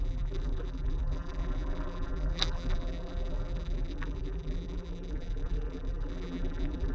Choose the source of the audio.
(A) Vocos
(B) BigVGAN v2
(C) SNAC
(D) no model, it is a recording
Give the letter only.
B